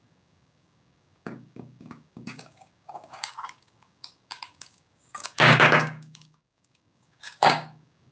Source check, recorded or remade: remade